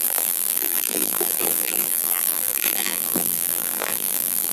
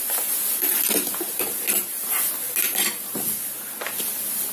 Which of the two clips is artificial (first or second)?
first